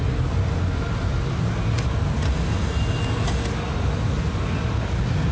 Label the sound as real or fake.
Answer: real